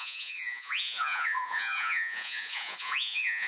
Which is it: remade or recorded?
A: remade